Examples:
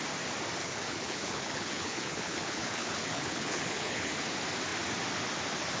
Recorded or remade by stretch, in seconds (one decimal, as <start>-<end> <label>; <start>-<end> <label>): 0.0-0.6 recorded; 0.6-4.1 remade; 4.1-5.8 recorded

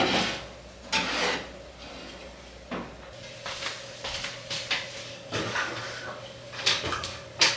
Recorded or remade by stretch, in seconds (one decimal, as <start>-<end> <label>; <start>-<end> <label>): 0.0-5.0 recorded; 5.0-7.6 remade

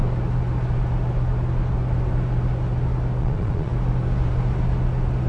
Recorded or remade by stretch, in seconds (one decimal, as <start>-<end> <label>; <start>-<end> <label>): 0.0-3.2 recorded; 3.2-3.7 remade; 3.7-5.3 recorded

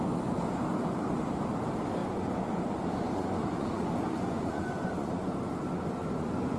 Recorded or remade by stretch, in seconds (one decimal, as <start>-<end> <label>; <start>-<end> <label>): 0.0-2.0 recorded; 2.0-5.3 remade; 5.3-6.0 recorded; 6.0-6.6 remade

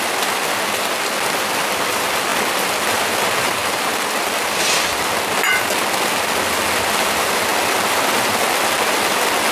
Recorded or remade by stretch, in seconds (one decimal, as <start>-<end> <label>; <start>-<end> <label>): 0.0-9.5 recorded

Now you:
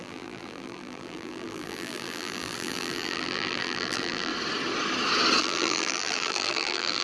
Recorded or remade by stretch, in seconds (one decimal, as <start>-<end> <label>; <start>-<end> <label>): 0.0-4.3 remade; 4.3-5.4 recorded; 5.4-7.0 remade

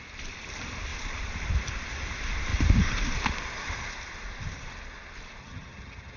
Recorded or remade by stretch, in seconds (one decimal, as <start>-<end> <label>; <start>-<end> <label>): 0.0-5.4 recorded; 5.4-6.2 remade

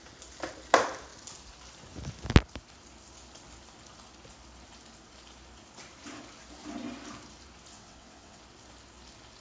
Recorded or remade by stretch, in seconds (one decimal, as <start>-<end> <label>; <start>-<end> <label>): 0.0-7.7 recorded; 7.7-8.4 remade; 8.4-9.4 recorded